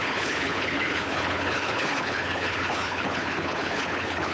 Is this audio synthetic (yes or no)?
yes